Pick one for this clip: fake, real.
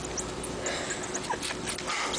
real